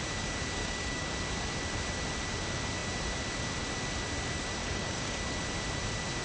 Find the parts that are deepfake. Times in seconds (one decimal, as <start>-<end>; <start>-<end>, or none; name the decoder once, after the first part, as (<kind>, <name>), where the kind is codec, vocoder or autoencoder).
0.6-1.1 (codec, DAC); 4.6-5.2